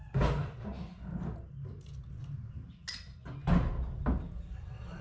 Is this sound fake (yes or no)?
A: no